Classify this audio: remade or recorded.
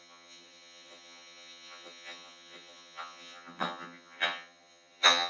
remade